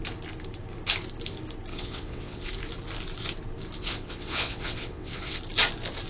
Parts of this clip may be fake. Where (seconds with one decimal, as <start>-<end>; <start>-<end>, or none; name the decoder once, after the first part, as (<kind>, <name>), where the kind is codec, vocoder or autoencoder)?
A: 1.7-2.5 (vocoder, WaveNeXt); 3.8-5.4